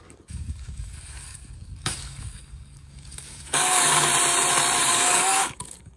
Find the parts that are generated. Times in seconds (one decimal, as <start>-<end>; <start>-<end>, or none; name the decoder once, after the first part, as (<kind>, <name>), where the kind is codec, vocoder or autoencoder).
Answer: 0.0-4.1 (codec, DAC); 4.8-6.0